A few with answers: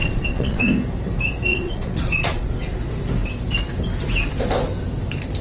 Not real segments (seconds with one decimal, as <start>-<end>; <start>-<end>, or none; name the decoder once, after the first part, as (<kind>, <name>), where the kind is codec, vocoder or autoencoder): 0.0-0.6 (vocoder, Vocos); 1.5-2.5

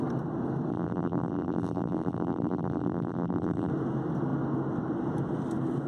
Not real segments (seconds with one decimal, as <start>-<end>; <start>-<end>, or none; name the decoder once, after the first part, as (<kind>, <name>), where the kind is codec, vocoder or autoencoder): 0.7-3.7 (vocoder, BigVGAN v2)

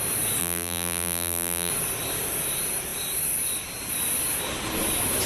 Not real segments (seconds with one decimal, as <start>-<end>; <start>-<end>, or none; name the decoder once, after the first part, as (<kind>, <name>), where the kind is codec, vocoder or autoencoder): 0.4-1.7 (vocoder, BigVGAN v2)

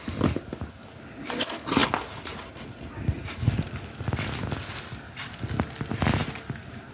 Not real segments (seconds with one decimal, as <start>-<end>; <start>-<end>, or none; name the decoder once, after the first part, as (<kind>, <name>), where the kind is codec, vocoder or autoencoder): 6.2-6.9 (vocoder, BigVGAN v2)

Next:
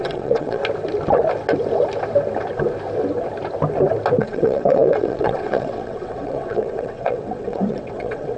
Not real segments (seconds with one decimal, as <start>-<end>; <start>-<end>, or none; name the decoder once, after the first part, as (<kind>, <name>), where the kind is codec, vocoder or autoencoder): 0.0-0.6 (vocoder, WaveNeXt); 4.2-8.4

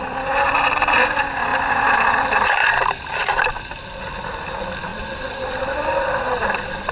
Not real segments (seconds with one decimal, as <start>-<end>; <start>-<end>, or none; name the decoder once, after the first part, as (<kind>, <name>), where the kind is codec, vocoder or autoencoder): 1.5-2.1 (vocoder, BigVGAN v2); 2.6-4.0; 4.9-5.6